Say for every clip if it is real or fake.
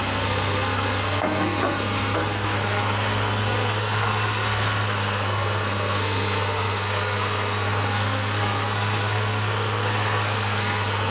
fake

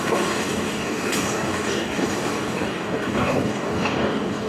fake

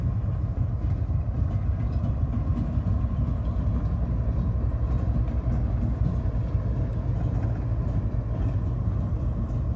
real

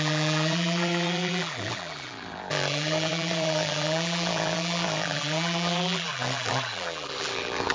fake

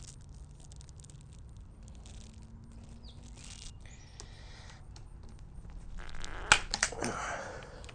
real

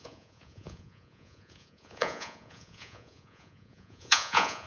fake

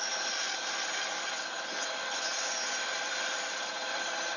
real